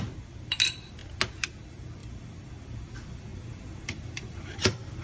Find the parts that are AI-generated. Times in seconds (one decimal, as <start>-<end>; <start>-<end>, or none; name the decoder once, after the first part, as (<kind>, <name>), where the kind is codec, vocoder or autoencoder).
0.0-1.0 (vocoder, BigVGAN v2); 1.6-3.3; 4.0-5.0